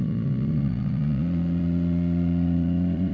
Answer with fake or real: fake